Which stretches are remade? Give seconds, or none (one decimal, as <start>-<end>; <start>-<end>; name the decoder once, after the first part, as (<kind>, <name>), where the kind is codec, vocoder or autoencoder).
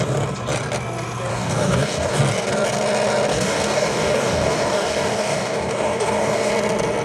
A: 1.3-2.2 (codec, DAC); 3.3-6.5